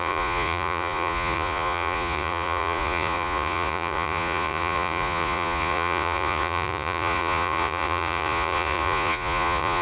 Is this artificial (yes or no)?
yes